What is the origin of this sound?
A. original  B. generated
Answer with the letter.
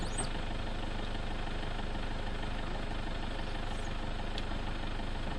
A